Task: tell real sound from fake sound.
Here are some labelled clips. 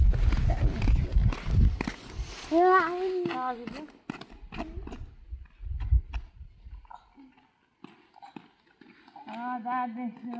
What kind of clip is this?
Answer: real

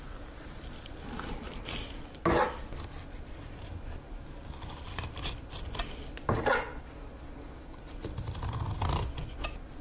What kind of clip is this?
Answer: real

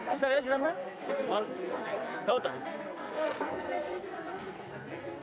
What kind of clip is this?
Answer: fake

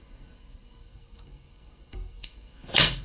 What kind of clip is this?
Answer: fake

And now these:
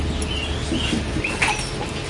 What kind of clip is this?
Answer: fake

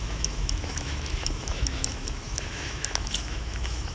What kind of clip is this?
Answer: fake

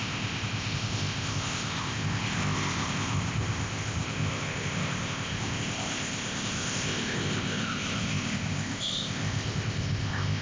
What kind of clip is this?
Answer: fake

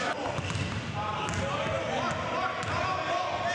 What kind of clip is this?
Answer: real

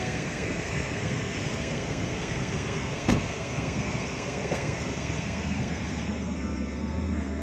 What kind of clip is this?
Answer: fake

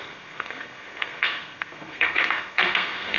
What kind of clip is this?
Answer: fake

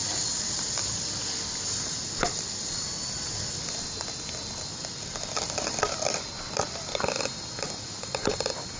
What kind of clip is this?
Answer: real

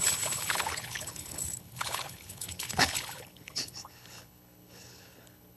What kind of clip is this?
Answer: fake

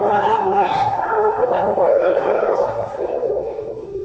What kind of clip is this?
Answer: fake